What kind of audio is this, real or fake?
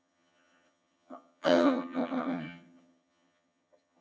fake